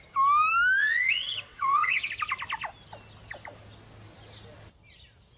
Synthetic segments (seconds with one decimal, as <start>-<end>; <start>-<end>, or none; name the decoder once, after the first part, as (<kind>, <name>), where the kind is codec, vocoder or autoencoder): 0.8-2.1 (vocoder, WaveNeXt)